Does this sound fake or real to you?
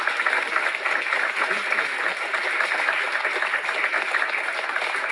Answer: real